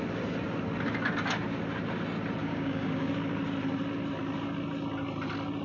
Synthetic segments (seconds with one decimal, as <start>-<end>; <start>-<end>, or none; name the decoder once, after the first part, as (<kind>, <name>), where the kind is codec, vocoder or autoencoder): 2.4-3.1 (codec, DAC)